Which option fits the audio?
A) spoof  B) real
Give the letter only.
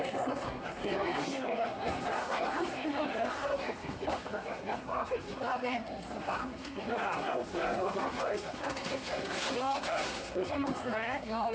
A